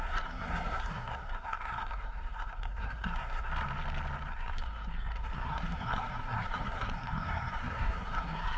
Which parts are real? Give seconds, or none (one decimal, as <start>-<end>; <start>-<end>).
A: 3.5-4.3

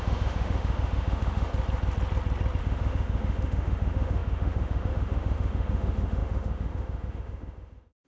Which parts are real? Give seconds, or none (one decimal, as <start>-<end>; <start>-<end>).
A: 1.5-2.6

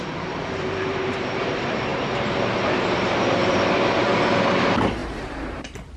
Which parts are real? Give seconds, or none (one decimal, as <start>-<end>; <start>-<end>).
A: none

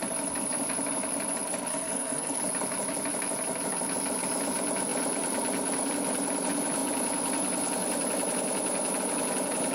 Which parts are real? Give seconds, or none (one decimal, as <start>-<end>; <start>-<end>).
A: 0.0-1.7; 2.4-9.7

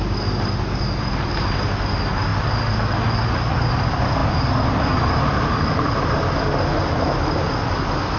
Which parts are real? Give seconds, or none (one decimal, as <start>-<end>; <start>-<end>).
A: 0.0-8.2

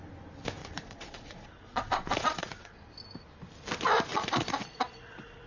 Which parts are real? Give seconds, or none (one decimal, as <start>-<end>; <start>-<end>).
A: 0.0-0.6; 2.9-4.1

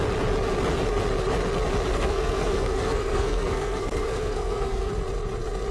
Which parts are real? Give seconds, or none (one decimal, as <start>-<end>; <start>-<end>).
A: 0.0-1.9; 4.9-5.7

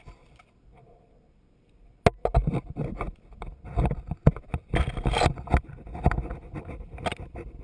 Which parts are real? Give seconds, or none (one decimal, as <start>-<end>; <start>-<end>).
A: 0.0-7.6